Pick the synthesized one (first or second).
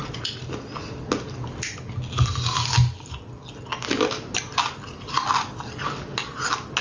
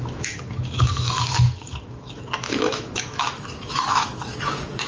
second